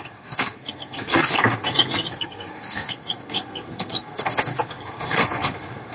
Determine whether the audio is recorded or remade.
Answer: remade